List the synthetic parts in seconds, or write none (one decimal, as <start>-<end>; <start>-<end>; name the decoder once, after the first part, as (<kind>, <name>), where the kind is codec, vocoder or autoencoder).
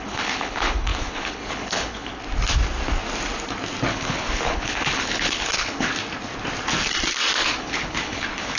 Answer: 0.0-2.1 (codec, HILCodec); 3.9-5.9; 7.6-8.6